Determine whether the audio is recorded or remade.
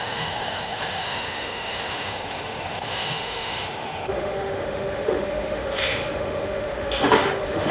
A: remade